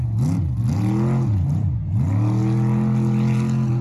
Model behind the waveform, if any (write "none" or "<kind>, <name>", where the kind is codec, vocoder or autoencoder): none